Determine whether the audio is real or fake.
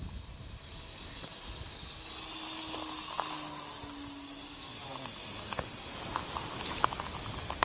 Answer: real